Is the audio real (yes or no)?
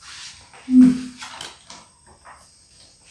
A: yes